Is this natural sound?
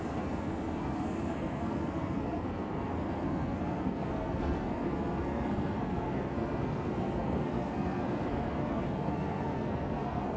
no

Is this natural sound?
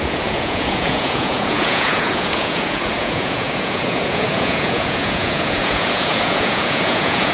no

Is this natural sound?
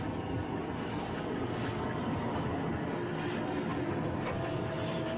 yes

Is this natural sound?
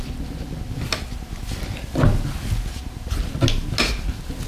yes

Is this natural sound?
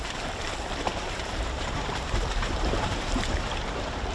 no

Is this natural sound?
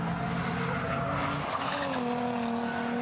yes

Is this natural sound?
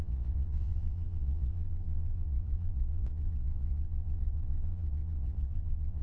no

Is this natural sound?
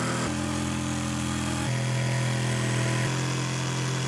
yes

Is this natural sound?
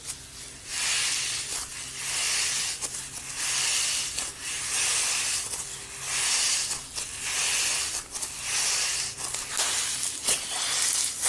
yes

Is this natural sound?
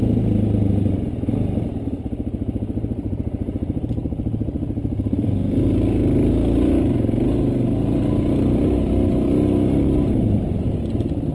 yes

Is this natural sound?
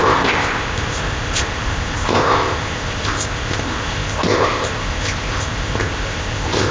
no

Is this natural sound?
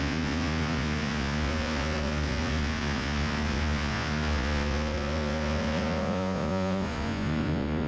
no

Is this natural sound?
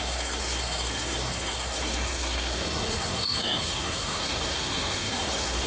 no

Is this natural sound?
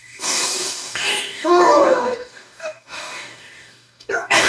no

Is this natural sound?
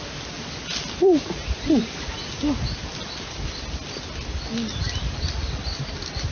yes